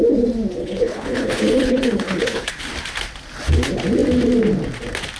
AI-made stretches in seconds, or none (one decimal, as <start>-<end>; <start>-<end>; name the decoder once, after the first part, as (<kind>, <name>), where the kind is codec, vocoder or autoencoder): 0.6-2.5 (codec, HILCodec)